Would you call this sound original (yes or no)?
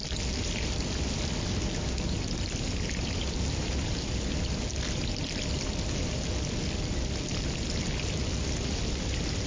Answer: yes